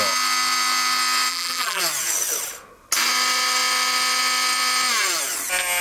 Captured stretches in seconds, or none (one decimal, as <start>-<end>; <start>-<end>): 0.0-1.3; 1.8-5.8